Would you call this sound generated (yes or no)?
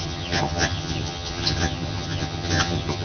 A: yes